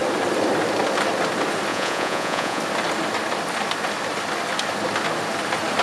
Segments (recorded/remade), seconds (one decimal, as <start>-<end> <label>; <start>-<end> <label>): 0.0-1.7 recorded; 1.7-2.6 remade; 2.6-5.8 recorded